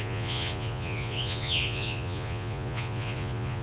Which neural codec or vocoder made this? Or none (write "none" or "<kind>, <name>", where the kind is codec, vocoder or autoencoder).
vocoder, Vocos